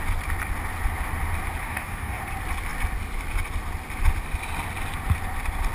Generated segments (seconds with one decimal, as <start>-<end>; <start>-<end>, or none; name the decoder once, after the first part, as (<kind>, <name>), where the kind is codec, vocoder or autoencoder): 1.6-2.2 (codec, DAC)